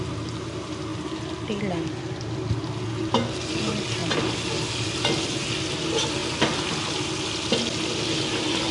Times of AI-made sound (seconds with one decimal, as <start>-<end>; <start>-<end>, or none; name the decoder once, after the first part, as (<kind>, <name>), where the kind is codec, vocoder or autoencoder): none